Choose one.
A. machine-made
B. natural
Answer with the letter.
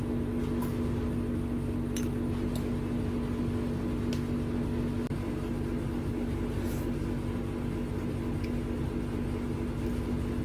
B